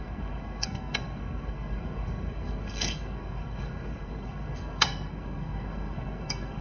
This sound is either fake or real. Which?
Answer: fake